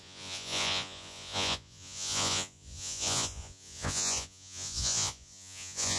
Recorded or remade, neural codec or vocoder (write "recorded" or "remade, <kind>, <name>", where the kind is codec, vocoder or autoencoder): remade, vocoder, Vocos